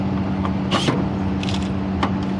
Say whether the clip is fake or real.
real